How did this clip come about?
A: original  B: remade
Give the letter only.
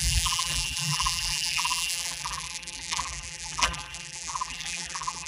B